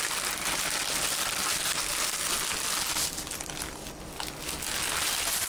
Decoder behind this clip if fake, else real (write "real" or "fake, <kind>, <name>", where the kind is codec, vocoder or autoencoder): real